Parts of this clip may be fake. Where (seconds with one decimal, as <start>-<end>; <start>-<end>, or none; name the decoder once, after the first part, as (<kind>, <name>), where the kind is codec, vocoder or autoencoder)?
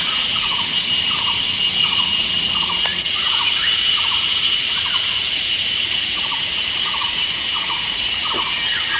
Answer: 0.0-0.5 (vocoder, Vocos); 1.8-9.0